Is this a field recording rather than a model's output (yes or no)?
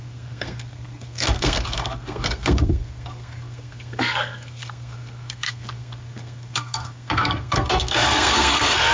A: no